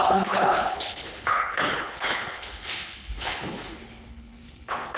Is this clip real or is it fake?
fake